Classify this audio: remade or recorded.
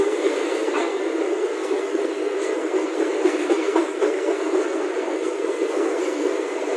remade